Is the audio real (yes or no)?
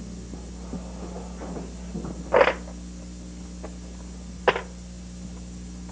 yes